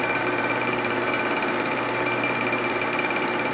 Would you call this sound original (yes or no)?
no